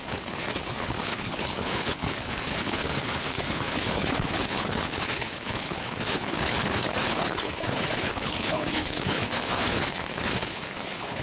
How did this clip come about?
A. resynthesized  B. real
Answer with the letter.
A